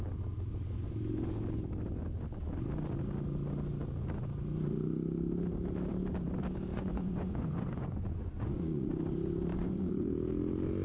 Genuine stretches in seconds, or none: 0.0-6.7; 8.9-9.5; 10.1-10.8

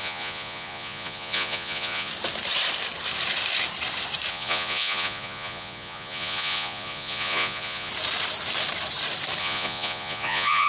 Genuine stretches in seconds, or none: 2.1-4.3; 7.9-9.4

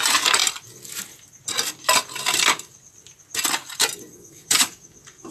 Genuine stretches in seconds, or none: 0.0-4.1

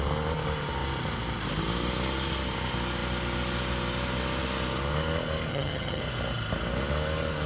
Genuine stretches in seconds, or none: 0.0-5.5; 6.0-7.5

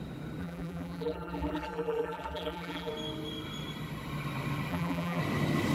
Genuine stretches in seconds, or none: 0.0-0.4; 2.9-4.7; 5.2-5.7

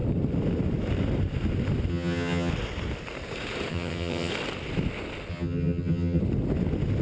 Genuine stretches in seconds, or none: 0.0-1.9; 2.5-3.7; 4.3-5.3; 6.2-7.0

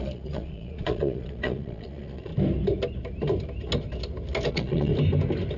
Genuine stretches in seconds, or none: 2.3-4.5; 4.9-5.6